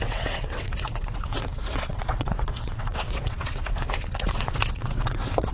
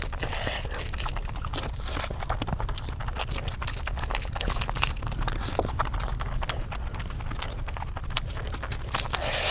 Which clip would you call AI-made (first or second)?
first